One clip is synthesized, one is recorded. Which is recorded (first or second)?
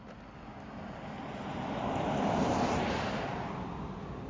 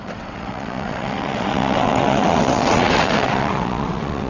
first